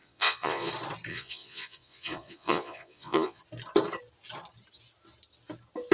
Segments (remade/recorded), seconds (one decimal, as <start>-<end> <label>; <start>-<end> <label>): 0.0-0.7 remade; 0.7-1.1 recorded; 1.1-3.4 remade; 3.4-5.9 recorded